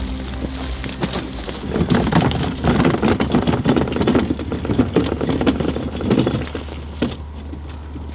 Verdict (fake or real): real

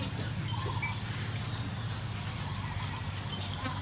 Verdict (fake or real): real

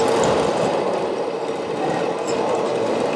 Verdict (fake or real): real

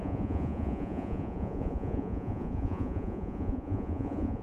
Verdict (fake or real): fake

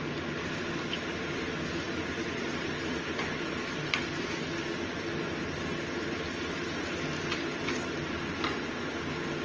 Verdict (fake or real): real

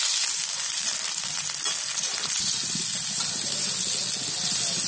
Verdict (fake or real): real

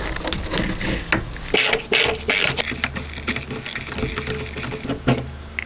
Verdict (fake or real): real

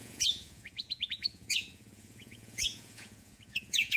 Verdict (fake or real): fake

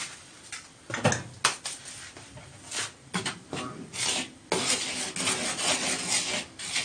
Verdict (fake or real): real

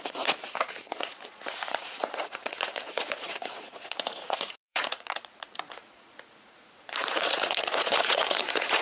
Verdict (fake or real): fake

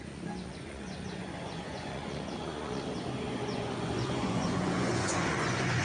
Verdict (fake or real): fake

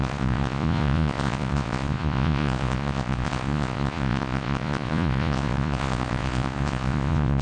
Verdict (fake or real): fake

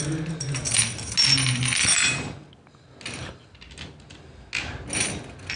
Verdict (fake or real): real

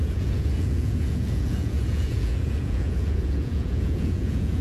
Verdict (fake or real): fake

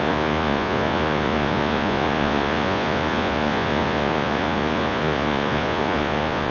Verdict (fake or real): fake